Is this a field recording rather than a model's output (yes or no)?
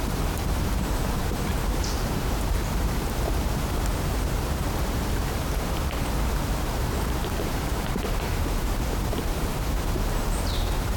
no